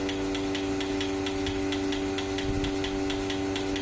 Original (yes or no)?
yes